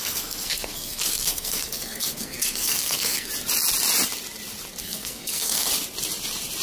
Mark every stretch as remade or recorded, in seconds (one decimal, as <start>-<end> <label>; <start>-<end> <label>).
0.0-3.3 remade; 3.3-4.8 recorded; 4.8-5.7 remade; 5.7-6.6 recorded